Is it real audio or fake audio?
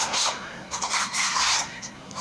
fake